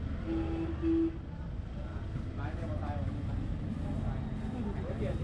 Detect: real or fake real